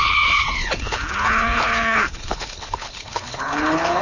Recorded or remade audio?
remade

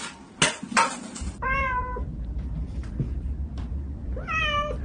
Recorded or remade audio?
recorded